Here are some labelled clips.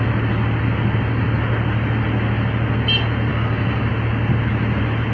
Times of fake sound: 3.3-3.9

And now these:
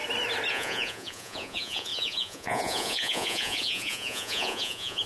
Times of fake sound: 0.5-5.1

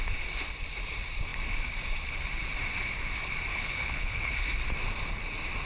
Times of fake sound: 3.5-4.3

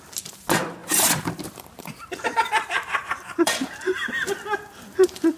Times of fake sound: 0.8-3.7

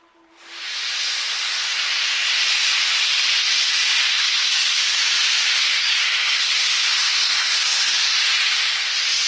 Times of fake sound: 4.1-4.8; 5.6-8.0

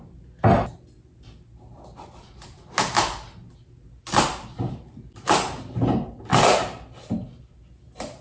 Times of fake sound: none

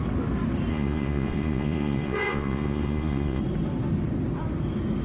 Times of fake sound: 0.7-3.4

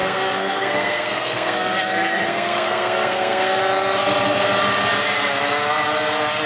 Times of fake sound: 0.0-3.6